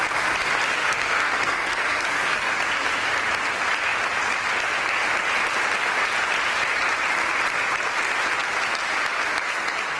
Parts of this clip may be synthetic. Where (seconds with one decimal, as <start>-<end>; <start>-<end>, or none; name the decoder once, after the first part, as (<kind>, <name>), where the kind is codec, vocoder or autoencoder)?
0.8-2.5 (codec, SNAC)